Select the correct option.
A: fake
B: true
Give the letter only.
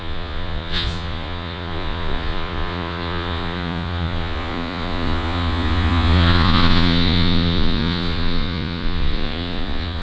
A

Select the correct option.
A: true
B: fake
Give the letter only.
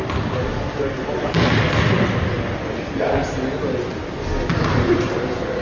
A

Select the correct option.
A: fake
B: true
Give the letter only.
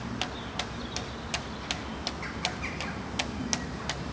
B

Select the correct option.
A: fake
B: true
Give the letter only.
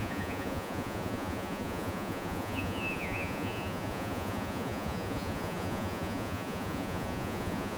A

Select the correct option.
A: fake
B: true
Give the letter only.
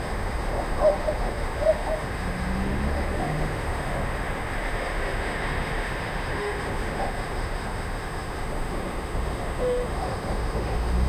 A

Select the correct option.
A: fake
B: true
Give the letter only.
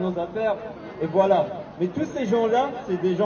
B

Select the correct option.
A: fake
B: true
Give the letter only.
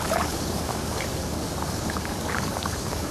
A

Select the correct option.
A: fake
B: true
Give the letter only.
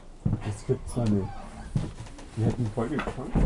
B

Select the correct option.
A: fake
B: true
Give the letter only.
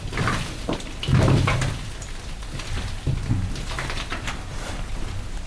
B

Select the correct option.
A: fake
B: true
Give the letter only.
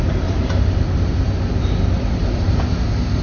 B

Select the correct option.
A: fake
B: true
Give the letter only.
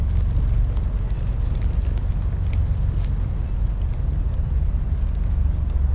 B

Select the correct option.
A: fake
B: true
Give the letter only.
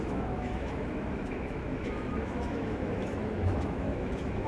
A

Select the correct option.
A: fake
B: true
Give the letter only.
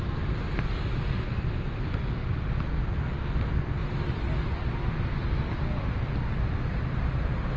B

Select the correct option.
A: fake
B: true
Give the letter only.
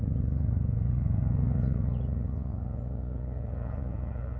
A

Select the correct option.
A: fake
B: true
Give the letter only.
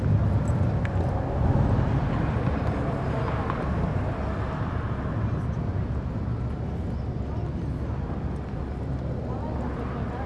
B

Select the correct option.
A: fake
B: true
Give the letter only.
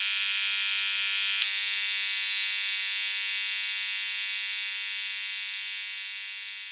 B